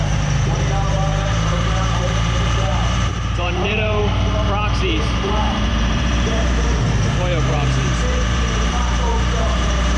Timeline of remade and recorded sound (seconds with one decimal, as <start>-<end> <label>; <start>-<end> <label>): 0.0-4.0 remade; 4.0-5.0 recorded; 5.0-10.0 remade